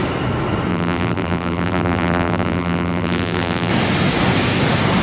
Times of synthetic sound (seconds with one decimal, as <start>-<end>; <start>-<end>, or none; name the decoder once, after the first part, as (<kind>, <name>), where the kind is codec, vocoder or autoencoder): 0.7-3.7 (vocoder, BigVGAN v2)